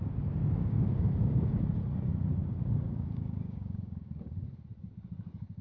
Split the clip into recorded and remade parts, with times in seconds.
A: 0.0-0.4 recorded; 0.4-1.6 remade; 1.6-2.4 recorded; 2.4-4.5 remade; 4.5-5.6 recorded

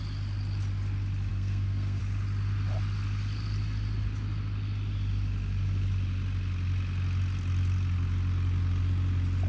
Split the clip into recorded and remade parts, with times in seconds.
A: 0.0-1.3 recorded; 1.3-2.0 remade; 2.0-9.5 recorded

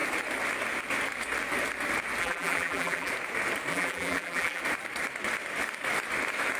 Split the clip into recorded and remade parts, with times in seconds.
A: 0.0-2.2 recorded; 2.2-3.1 remade; 3.1-3.7 recorded; 3.7-4.6 remade; 4.6-6.6 recorded

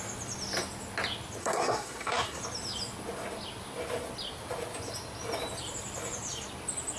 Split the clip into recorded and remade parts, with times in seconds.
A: 0.0-1.4 recorded; 1.4-2.4 remade; 2.4-7.0 recorded

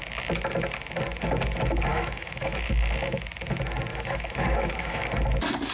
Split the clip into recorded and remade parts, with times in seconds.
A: 0.0-1.9 recorded; 1.9-3.2 remade; 3.2-3.9 recorded; 3.9-5.0 remade; 5.0-5.7 recorded

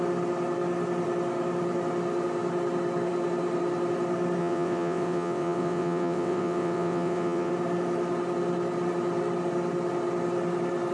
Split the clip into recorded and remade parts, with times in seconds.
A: 0.0-4.4 recorded; 4.4-7.5 remade; 7.5-10.9 recorded

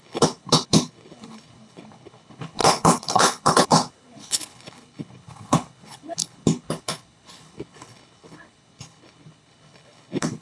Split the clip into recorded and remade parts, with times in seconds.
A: 0.0-10.4 remade

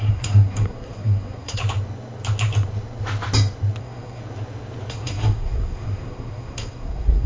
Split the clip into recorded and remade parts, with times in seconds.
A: 0.0-1.6 remade; 1.6-3.8 recorded; 3.8-4.2 remade; 4.2-4.9 recorded; 4.9-7.3 remade